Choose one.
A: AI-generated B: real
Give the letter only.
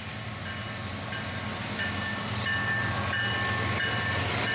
B